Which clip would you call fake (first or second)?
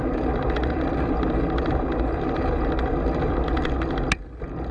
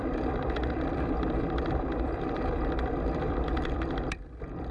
second